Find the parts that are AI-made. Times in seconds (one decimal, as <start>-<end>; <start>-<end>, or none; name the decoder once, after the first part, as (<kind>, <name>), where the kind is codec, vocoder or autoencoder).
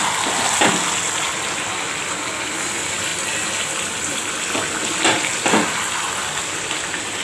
none